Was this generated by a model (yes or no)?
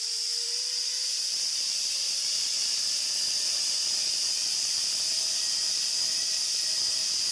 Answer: yes